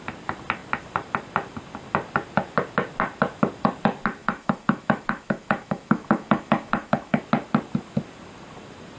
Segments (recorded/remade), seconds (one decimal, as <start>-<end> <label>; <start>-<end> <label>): 0.0-4.2 recorded; 4.2-7.2 remade; 7.2-9.0 recorded